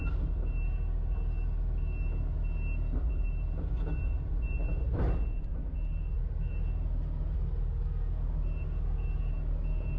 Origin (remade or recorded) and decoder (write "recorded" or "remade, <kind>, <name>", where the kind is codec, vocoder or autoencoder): recorded